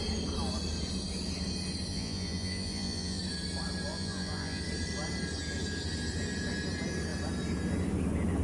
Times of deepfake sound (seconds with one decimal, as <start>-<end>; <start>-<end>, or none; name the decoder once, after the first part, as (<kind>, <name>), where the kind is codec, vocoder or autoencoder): 1.9-3.2 (vocoder, Vocos); 3.9-4.6